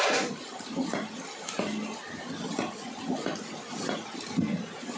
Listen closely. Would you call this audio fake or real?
real